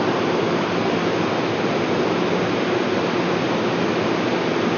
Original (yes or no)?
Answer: yes